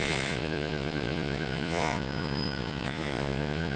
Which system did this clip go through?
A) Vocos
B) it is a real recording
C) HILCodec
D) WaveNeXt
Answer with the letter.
A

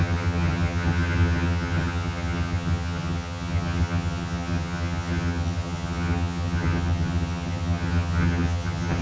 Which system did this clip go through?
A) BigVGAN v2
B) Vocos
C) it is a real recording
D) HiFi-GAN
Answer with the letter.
D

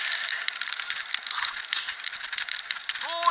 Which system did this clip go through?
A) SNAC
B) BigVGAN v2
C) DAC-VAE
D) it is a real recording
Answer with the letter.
D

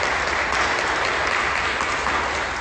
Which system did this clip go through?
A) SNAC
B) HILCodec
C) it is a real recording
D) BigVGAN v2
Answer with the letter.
C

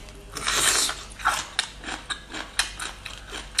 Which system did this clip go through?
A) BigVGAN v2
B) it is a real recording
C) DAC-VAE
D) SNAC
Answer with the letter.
B